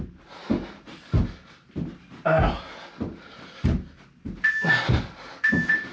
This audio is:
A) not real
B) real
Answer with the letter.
B